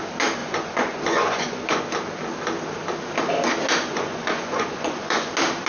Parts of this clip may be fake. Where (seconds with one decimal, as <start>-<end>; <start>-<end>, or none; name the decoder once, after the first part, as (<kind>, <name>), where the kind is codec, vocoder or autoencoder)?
0.4-1.8 (vocoder, Vocos); 3.8-5.3